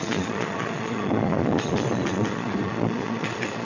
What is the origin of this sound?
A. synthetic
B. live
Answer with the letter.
A